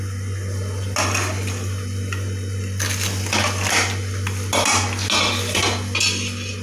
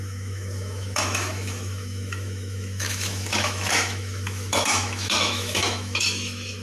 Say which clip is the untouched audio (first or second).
first